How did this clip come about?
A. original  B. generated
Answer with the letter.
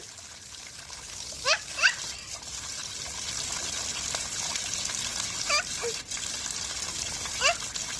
A